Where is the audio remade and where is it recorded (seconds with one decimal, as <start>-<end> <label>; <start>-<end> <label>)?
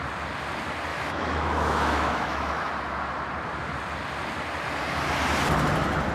0.0-0.9 recorded; 0.9-2.7 remade; 2.7-6.1 recorded